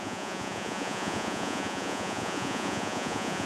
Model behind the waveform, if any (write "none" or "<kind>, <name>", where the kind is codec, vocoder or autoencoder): vocoder, Vocos